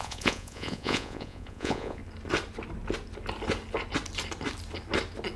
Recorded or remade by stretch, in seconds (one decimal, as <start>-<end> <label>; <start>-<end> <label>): 0.0-2.0 remade; 2.0-5.4 recorded